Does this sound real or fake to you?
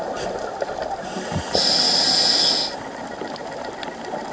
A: real